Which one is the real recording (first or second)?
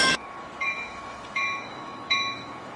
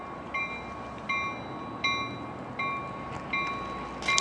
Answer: second